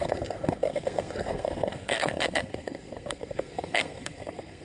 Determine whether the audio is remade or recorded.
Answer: remade